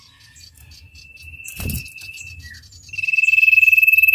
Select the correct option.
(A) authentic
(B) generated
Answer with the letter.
A